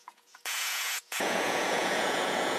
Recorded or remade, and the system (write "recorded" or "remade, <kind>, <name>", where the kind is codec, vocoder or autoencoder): remade, vocoder, Vocos